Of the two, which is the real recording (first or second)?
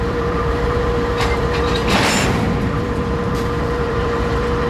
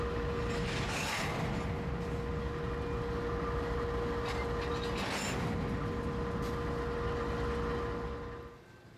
second